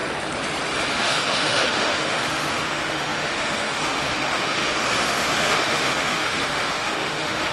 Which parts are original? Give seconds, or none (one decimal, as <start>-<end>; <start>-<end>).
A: 0.0-0.9